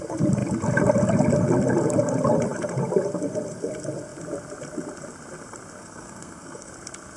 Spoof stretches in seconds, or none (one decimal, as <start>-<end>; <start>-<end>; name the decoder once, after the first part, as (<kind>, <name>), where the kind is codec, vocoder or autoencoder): 5.8-6.7 (codec, SNAC)